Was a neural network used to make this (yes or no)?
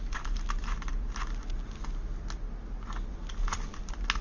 no